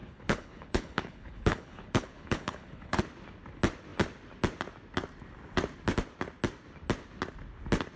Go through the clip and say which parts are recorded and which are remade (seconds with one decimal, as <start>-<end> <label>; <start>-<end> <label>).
0.0-3.0 remade; 3.0-8.0 recorded